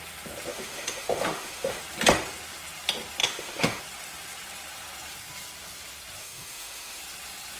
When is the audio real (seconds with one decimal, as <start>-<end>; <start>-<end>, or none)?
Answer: 0.0-0.5; 1.8-3.2; 3.8-6.2; 7.0-7.6